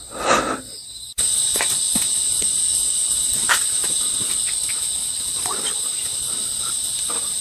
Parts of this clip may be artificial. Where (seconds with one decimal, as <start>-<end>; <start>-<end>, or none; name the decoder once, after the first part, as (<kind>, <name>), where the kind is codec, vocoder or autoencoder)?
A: 2.7-4.7 (vocoder, BigVGAN v2); 6.1-7.0